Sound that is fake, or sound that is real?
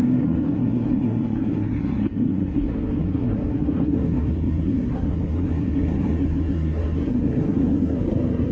fake